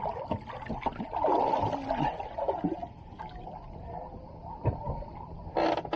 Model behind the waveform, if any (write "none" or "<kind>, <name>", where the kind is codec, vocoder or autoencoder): none